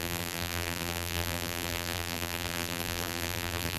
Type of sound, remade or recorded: remade